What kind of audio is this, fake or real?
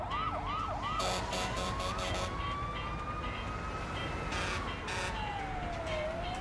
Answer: real